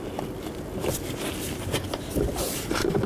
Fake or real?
real